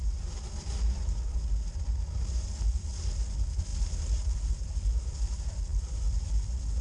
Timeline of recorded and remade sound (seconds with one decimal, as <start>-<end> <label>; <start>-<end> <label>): 0.0-5.7 recorded; 5.7-6.3 remade; 6.3-6.8 recorded